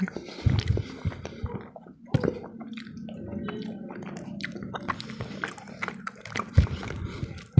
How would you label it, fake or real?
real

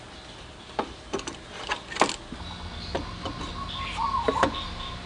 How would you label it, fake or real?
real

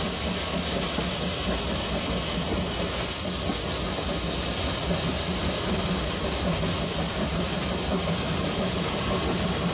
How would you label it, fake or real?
real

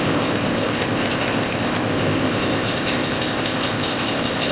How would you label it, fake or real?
fake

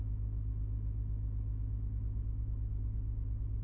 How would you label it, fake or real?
real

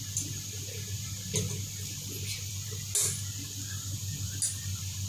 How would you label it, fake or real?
real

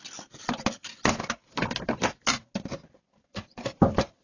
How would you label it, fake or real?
real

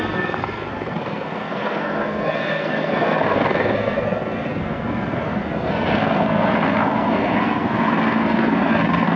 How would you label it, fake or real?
fake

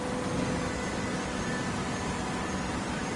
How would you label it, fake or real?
real